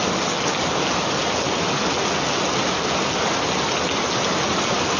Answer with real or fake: real